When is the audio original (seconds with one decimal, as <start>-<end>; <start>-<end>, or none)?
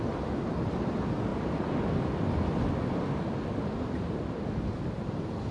0.0-5.5